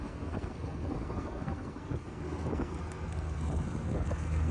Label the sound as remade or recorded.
remade